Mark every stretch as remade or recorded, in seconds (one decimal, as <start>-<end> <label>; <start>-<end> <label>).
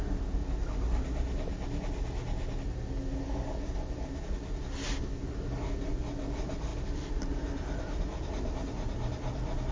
0.0-9.7 recorded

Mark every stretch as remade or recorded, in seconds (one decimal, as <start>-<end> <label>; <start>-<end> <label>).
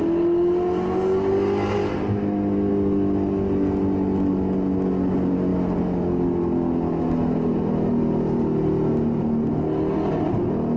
0.0-10.8 recorded